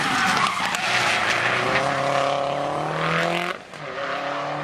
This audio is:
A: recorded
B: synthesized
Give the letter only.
A